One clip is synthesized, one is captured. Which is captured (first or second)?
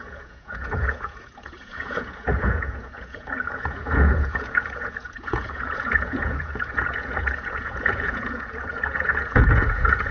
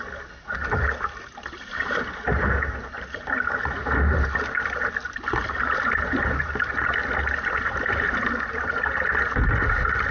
second